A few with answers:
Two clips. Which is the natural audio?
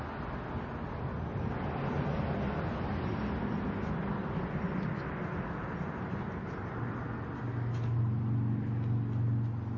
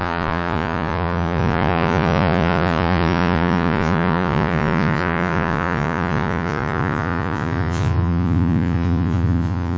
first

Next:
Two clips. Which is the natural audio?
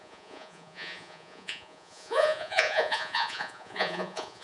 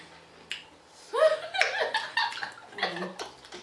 second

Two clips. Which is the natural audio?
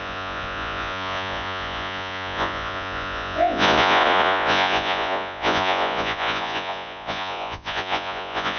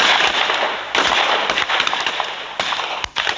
second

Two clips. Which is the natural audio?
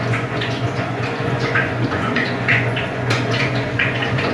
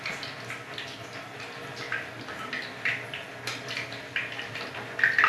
second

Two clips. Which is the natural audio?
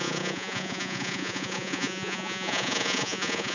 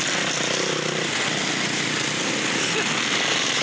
second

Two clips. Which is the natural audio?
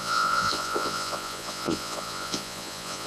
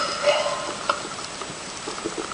second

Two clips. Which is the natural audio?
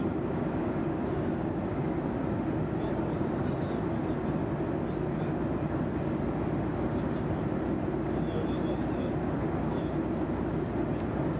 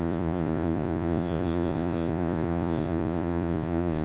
first